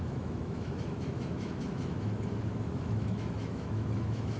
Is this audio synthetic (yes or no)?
yes